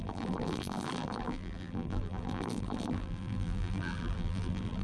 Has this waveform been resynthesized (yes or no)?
yes